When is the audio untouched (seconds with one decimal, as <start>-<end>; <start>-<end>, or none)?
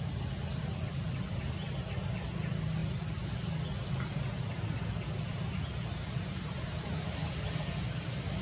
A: 0.0-8.4